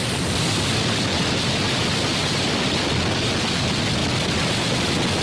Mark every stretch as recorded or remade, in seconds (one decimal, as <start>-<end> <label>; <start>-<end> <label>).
0.0-5.2 recorded